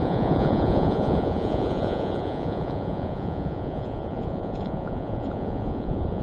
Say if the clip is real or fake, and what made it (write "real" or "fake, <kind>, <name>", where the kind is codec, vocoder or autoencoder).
fake, vocoder, Vocos